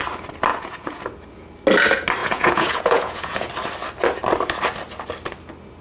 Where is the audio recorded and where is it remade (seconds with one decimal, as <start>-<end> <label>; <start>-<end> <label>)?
0.0-0.5 recorded; 0.5-1.0 remade; 1.0-2.2 recorded; 2.2-3.5 remade; 3.5-5.8 recorded